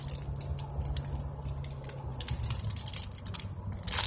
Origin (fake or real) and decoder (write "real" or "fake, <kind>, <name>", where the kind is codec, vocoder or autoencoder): real